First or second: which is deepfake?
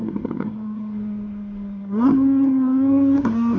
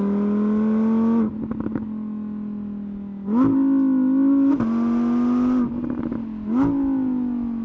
first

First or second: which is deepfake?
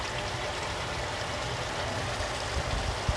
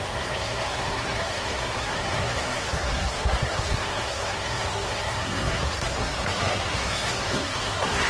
second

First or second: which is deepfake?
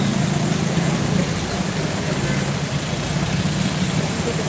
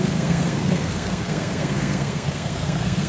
second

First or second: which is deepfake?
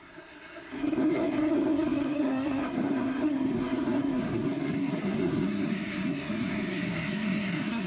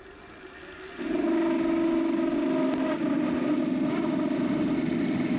first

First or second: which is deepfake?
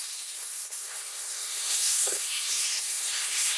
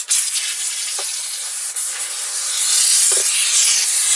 first